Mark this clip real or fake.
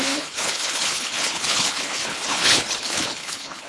fake